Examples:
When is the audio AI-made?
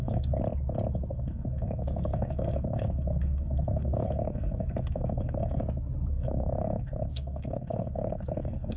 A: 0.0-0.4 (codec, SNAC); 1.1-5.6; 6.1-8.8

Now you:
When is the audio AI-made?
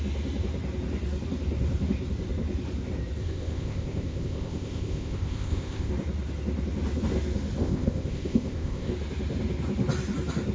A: 3.2-5.9 (codec, ZipCodec); 7.6-8.9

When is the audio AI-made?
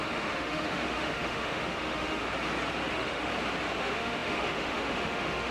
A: 0.0-2.2 (autoencoder, DAC-VAE); 2.9-3.3; 3.8-5.5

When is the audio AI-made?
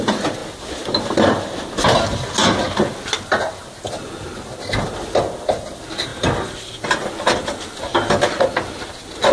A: 6.1-8.4 (vocoder, BigVGAN v2)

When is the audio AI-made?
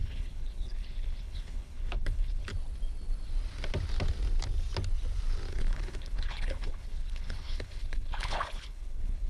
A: 0.0-2.5 (codec, HILCodec); 5.5-9.3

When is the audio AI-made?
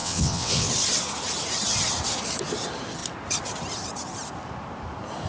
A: 0.0-0.7 (vocoder, WaveNeXt)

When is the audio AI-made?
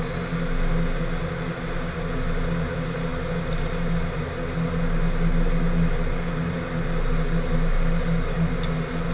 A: none